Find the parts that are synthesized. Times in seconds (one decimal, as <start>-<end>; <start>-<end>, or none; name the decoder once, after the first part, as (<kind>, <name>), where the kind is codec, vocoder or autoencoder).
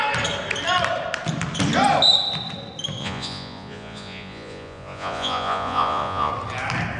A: 3.0-6.3 (vocoder, Vocos)